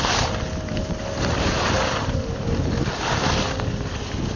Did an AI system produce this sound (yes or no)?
no